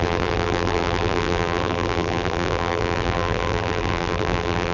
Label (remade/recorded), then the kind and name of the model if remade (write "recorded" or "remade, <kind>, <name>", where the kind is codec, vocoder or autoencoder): remade, vocoder, BigVGAN v2